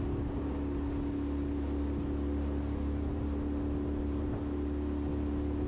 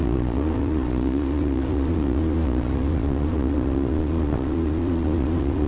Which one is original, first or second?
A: first